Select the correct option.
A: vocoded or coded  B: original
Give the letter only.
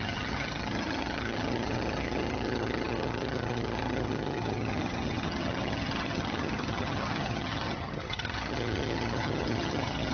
A